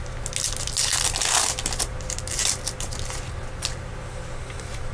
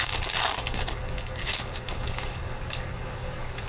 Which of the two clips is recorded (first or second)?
first